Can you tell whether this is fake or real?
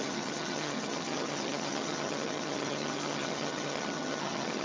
fake